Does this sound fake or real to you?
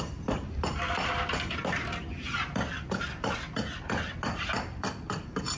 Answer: real